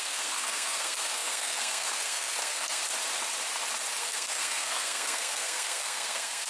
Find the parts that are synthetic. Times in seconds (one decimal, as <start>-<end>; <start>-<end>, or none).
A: 0.0-2.8; 4.0-6.5